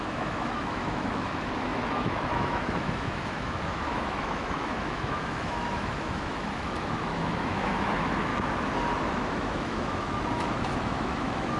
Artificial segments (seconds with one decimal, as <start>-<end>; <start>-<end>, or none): 0.0-8.3; 9.0-11.6